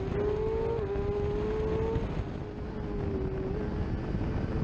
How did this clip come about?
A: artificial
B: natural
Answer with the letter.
B